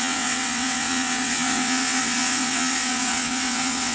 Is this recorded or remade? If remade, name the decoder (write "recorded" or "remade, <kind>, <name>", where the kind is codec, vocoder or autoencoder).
remade, vocoder, WaveNeXt